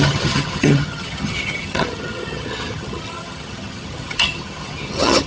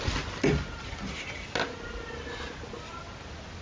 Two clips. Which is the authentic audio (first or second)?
second